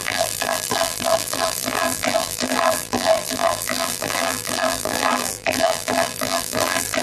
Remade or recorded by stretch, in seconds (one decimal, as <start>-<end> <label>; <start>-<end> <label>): 0.0-7.0 remade